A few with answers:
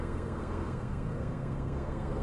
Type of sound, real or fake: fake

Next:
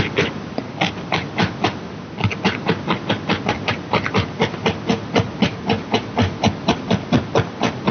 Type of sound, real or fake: real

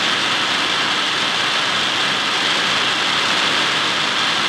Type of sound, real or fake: real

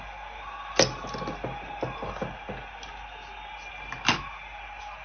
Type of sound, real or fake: real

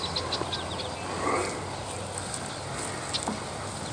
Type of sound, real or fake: real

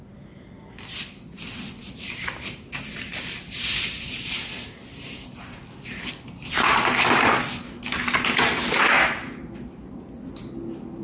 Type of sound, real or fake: real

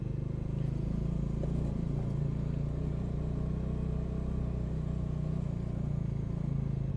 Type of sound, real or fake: real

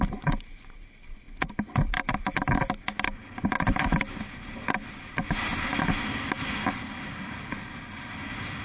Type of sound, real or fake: real